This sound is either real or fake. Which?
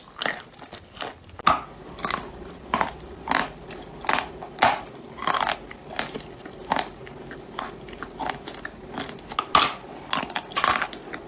real